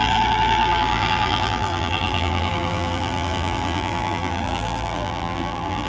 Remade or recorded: remade